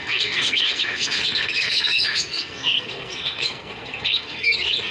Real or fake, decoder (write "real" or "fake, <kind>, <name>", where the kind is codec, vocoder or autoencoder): fake, codec, SNAC